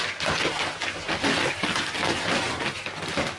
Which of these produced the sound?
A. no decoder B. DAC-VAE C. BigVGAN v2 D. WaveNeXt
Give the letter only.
A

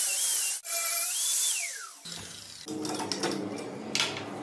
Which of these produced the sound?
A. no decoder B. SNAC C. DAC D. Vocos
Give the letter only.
A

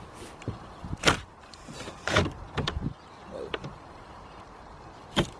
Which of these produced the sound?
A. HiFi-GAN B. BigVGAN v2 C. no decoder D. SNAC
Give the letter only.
B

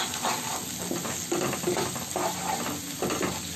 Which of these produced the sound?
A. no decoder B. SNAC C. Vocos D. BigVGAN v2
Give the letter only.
A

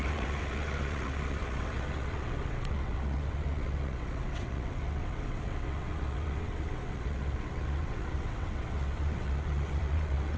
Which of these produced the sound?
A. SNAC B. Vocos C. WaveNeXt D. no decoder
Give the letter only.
C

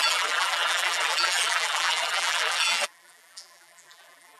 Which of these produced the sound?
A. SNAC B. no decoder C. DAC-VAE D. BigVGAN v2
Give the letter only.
D